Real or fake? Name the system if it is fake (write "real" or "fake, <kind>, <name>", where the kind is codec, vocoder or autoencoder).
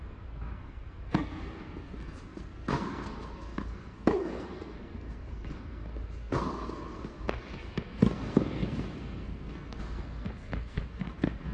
fake, codec, SNAC